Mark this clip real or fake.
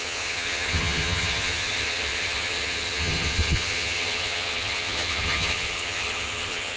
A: fake